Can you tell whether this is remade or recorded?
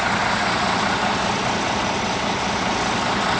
recorded